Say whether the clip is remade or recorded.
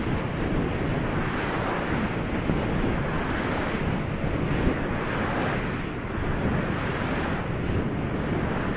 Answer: recorded